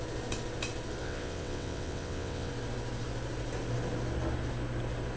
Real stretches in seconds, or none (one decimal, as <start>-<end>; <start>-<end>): 0.0-1.0; 2.5-5.2